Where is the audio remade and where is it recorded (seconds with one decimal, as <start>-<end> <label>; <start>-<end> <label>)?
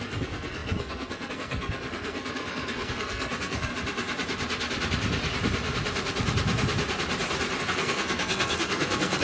0.0-3.7 remade; 3.7-7.6 recorded; 7.6-9.2 remade